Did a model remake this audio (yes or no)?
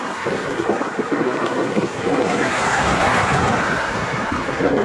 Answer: yes